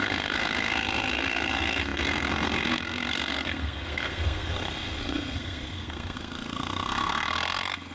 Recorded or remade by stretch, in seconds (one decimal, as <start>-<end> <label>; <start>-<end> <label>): 0.0-7.9 remade